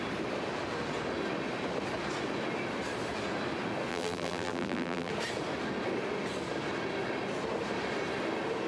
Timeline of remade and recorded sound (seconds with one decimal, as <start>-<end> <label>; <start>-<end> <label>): 0.0-3.9 recorded; 3.9-5.1 remade; 5.1-8.7 recorded